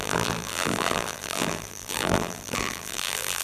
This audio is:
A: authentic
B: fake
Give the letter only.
B